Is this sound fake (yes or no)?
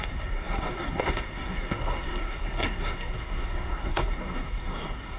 yes